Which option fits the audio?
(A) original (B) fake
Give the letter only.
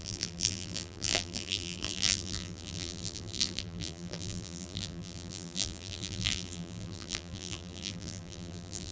B